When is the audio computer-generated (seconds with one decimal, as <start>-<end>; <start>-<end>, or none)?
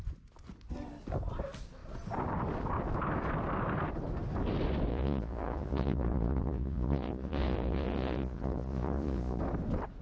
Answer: 4.9-9.4